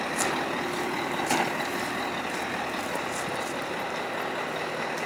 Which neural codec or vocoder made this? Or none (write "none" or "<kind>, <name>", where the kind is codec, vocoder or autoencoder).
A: none